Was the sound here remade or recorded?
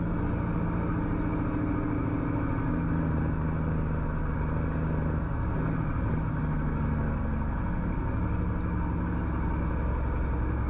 recorded